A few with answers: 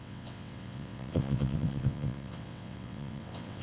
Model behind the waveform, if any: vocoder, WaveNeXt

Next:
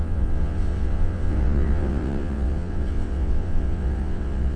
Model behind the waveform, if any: vocoder, WaveNeXt